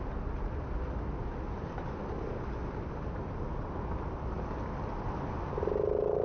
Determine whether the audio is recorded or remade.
recorded